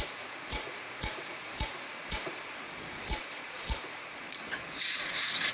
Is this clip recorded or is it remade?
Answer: remade